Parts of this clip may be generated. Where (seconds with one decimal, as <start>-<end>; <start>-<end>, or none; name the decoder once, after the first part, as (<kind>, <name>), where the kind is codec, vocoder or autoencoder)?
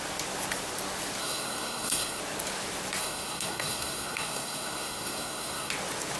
1.2-2.2 (codec, SNAC); 3.0-5.7